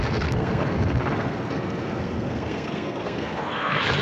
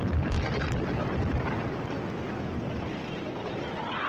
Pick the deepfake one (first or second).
first